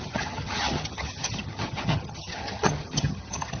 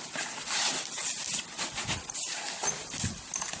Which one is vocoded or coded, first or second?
first